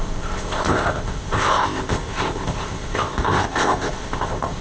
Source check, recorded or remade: remade